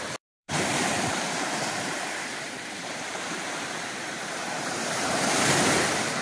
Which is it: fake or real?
fake